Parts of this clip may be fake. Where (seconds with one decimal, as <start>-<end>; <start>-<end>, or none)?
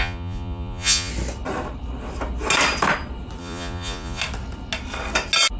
0.0-1.1; 3.4-4.2